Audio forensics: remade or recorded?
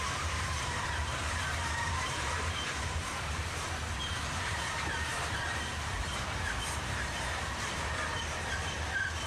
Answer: remade